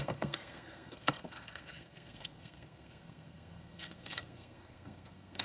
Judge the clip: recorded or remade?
remade